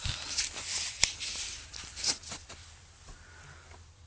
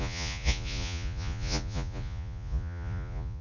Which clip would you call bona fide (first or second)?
first